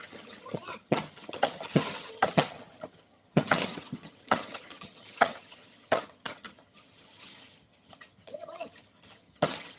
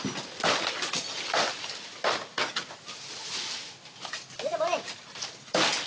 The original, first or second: second